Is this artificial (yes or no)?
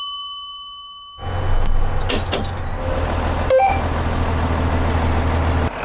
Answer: no